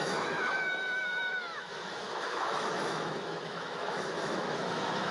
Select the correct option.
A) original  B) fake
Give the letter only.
B